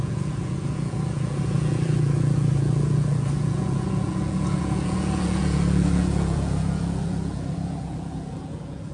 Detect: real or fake fake